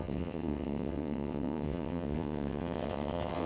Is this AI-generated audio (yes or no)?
yes